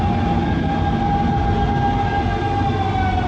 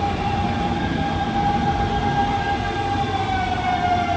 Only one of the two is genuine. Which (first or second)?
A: first